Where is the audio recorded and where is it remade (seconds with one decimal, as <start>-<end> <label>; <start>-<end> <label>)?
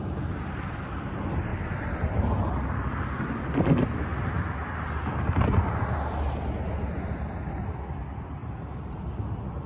0.0-4.1 recorded; 4.1-5.4 remade; 5.4-8.4 recorded; 8.4-9.2 remade; 9.2-9.7 recorded